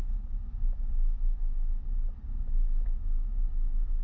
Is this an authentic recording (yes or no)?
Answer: yes